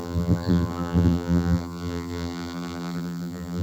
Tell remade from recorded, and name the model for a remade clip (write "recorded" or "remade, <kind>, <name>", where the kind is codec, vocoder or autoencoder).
remade, vocoder, BigVGAN v2